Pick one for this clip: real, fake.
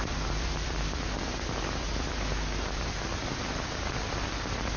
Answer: fake